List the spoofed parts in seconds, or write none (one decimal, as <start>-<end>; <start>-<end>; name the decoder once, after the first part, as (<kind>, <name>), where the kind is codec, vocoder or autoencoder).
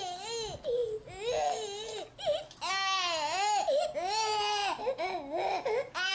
none